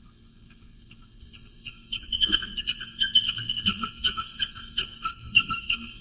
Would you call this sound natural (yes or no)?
no